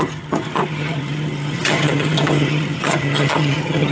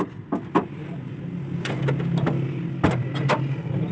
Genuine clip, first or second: second